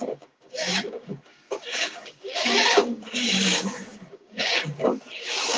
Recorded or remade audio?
remade